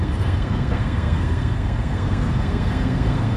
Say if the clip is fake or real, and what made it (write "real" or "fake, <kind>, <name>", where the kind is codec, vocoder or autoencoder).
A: fake, codec, SNAC